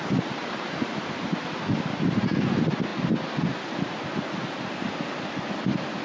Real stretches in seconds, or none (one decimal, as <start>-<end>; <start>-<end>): 0.0-0.4; 1.5-6.0